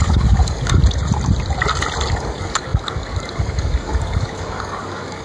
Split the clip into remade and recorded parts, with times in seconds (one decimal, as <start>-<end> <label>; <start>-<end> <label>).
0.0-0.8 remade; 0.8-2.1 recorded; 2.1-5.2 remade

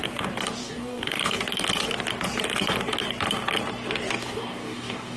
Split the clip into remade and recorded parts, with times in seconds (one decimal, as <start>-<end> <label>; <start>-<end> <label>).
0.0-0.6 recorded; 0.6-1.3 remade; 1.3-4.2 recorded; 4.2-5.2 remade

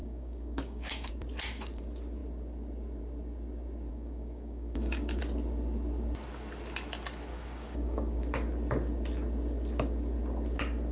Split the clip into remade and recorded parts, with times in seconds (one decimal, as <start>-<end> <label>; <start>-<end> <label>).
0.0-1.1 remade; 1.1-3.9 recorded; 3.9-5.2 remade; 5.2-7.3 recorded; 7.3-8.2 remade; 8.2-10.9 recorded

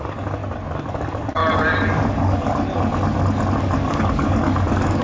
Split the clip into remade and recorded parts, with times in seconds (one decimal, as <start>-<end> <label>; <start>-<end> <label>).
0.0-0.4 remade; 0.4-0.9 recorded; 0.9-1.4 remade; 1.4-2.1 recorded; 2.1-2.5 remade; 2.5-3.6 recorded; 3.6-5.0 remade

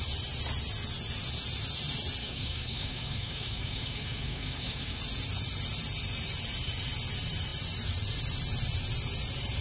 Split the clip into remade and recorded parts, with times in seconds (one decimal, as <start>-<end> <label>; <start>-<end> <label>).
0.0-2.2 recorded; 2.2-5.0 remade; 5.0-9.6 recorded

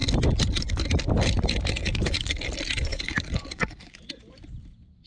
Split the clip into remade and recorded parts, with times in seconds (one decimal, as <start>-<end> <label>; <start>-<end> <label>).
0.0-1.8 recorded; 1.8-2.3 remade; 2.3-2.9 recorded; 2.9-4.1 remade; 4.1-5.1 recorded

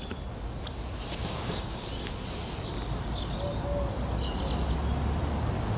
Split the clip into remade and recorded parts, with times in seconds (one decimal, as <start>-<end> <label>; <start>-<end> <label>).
0.0-1.2 recorded; 1.2-1.9 remade; 1.9-5.8 recorded